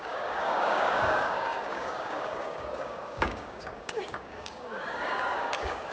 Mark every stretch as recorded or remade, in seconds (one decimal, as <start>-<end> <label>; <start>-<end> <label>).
0.0-5.9 remade